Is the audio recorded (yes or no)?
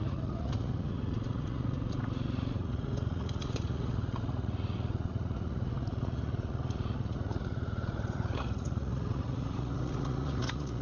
no